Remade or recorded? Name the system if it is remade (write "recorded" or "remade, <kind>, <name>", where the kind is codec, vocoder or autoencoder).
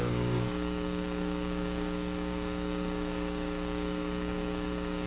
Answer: remade, codec, DAC